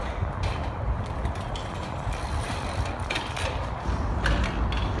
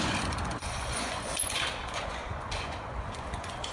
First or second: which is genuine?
first